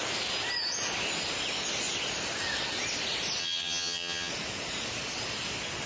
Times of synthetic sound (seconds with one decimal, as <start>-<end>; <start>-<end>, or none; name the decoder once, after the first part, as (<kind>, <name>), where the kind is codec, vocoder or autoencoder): 3.4-4.3 (vocoder, HiFi-GAN)